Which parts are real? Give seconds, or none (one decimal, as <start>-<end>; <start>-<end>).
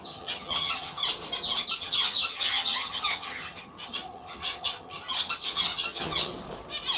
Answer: 1.0-1.8; 6.3-7.0